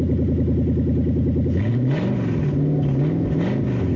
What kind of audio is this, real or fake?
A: real